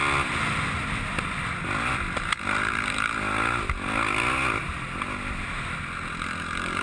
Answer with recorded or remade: recorded